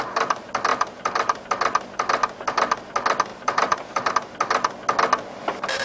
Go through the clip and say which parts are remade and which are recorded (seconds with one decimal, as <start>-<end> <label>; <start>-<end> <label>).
0.0-0.7 recorded; 0.7-1.4 remade; 1.4-3.3 recorded; 3.3-4.1 remade; 4.1-5.8 recorded